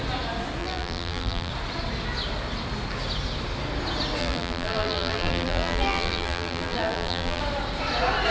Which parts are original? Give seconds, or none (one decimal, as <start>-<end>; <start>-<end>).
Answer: 0.0-0.6; 1.5-4.2; 7.4-8.3